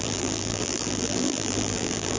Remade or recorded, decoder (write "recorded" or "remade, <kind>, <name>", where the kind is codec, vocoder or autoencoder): remade, vocoder, BigVGAN v2